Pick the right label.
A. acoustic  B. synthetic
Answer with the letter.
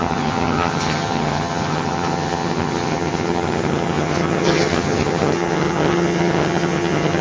B